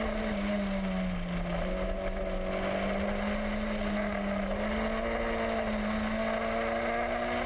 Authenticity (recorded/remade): recorded